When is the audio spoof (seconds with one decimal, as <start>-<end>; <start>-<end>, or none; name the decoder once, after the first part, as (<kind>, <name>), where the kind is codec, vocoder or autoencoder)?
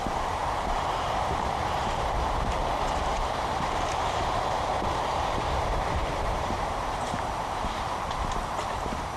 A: 0.0-9.2 (vocoder, BigVGAN v2)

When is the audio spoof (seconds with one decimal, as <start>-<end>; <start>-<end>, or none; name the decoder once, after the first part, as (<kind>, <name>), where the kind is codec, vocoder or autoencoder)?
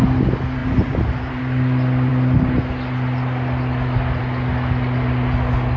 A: 0.6-1.4 (vocoder, BigVGAN v2)